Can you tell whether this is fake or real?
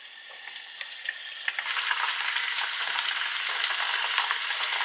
real